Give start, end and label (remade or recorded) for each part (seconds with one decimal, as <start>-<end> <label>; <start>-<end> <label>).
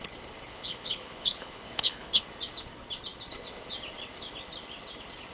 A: 0.0-0.5 recorded; 0.5-2.2 remade; 2.2-5.3 recorded